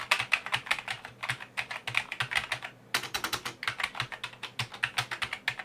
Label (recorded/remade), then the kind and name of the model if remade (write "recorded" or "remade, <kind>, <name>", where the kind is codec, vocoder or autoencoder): recorded